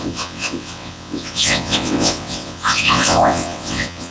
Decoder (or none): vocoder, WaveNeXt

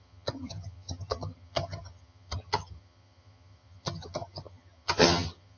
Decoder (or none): vocoder, HiFi-GAN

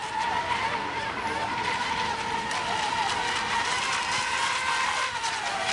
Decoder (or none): none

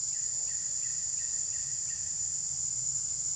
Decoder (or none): vocoder, Vocos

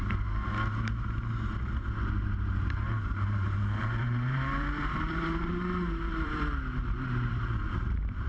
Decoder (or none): vocoder, BigVGAN v2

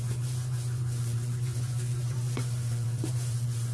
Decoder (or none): vocoder, Vocos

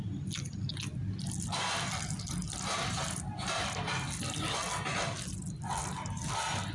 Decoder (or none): none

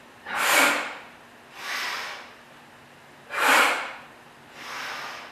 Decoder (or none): vocoder, BigVGAN v2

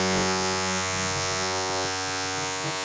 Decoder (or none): vocoder, Vocos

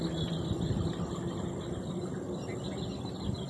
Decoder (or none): none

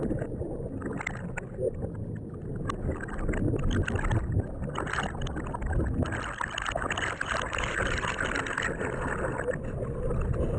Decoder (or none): none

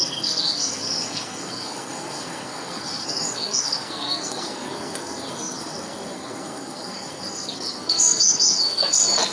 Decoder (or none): codec, SNAC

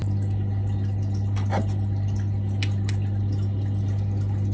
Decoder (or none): none